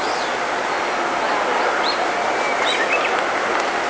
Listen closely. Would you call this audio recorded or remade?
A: recorded